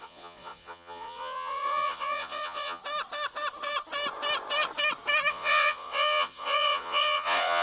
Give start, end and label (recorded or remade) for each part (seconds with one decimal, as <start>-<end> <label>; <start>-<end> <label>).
0.0-2.8 remade; 2.8-5.3 recorded; 5.3-7.6 remade